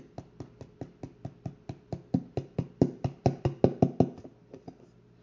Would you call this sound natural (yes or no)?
yes